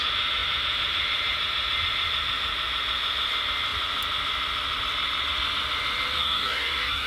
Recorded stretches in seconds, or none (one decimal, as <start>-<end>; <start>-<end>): 0.0-6.2